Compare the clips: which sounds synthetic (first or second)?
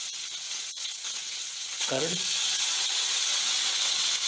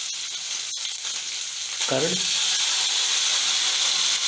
first